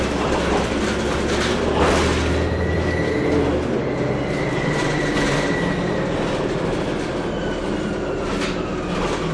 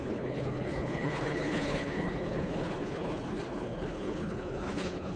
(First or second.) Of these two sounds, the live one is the first